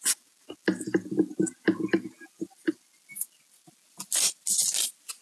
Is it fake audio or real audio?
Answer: real